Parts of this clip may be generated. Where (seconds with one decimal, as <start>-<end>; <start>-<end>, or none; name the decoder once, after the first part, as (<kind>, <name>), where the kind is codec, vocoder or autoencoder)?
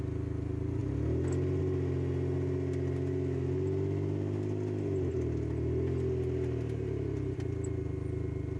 none